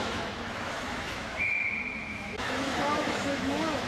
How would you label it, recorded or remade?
remade